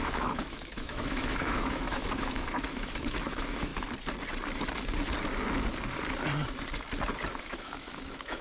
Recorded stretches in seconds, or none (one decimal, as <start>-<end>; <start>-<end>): 3.7-7.4